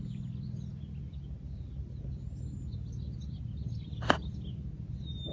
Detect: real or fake real